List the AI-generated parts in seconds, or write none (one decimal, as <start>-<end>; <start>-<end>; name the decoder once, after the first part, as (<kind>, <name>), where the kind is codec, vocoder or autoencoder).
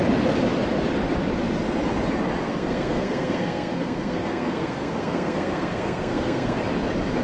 2.4-6.6 (codec, SNAC)